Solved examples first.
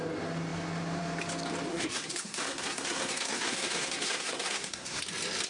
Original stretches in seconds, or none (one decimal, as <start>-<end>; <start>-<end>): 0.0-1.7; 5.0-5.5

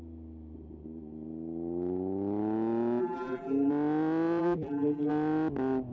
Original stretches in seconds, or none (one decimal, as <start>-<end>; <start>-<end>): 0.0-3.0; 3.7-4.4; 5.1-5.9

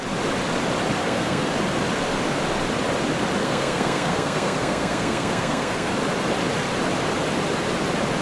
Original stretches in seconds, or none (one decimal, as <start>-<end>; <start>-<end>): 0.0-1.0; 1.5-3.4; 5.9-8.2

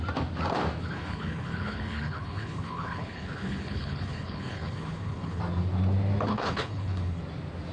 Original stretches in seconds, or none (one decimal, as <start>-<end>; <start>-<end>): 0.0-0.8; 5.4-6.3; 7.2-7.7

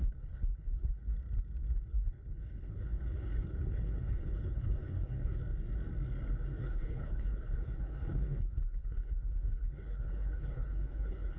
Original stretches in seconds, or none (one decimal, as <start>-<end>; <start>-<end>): 1.1-1.9; 5.4-6.6

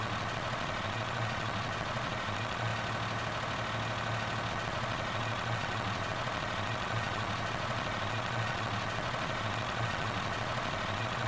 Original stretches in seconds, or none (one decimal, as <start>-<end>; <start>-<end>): 2.7-4.5

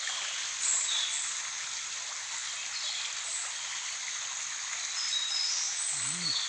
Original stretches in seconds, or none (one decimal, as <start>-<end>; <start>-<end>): 0.0-6.5